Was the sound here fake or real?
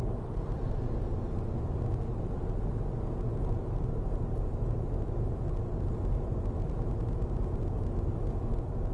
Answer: real